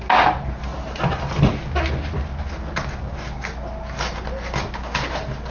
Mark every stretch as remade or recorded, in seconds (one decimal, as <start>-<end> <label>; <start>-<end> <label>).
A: 0.0-5.5 recorded